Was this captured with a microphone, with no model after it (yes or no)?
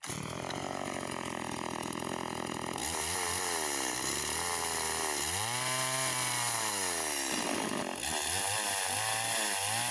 yes